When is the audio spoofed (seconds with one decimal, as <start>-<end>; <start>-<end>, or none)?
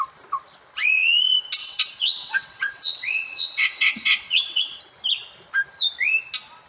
1.6-4.8